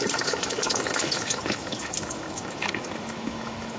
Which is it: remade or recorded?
remade